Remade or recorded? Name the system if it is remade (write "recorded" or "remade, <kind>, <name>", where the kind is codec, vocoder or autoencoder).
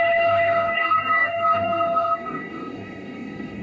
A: remade, codec, DAC